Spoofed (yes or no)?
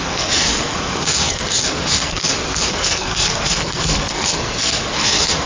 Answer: yes